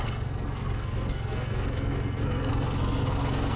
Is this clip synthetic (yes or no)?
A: yes